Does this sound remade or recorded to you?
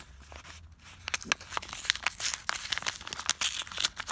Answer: recorded